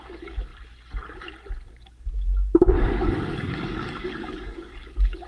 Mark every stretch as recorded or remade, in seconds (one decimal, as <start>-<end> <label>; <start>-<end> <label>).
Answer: 0.0-0.5 remade; 0.5-1.7 recorded; 1.7-5.3 remade